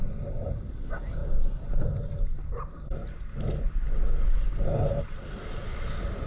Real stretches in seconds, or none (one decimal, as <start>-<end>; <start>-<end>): 0.0-6.3